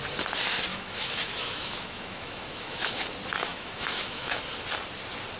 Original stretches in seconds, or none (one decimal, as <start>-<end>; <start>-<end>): 0.0-0.7; 3.0-3.5; 4.4-5.4